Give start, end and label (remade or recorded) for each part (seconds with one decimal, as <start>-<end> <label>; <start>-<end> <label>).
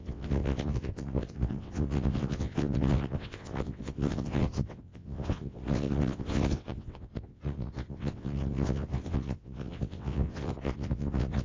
0.0-11.4 remade